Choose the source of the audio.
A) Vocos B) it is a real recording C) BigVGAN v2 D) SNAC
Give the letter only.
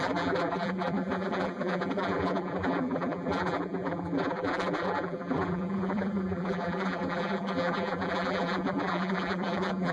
C